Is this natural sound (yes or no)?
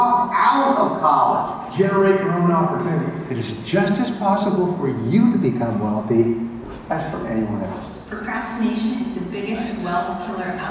yes